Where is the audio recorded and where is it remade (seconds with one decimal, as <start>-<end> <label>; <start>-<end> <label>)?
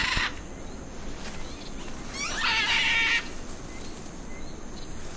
0.0-5.2 recorded